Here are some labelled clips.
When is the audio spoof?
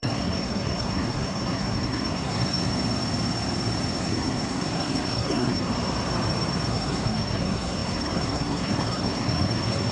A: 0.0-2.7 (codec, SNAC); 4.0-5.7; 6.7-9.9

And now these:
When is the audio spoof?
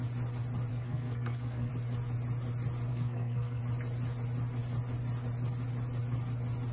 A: 0.7-1.7 (codec, SNAC); 2.9-3.6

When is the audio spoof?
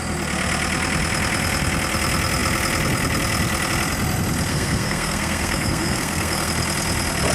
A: 4.5-6.5 (codec, SNAC)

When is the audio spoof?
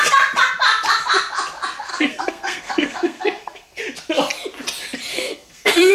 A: 1.9-3.8 (codec, SNAC); 5.1-5.9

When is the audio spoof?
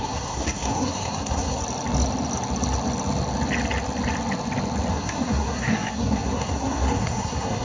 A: 0.0-1.6 (codec, SNAC); 4.9-7.6